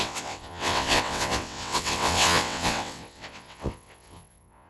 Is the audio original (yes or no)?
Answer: no